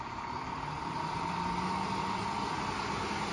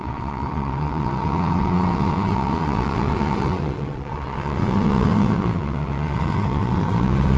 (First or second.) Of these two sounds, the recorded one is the first